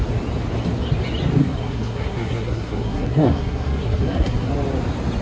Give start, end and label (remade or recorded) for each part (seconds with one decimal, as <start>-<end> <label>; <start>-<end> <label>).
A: 0.0-1.4 recorded; 1.4-4.5 remade; 4.5-5.2 recorded